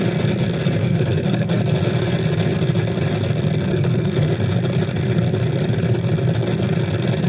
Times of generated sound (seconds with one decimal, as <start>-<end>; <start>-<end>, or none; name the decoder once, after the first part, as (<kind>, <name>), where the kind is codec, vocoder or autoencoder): 0.8-1.6 (codec, SNAC); 3.7-4.3